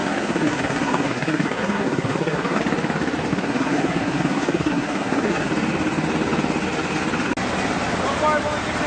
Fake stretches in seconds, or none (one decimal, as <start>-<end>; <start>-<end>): 0.0-2.6; 3.3-5.5